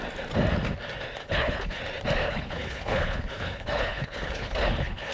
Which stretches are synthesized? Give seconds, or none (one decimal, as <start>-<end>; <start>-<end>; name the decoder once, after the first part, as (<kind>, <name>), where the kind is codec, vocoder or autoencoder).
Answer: 1.2-1.8 (codec, HILCodec); 2.2-5.1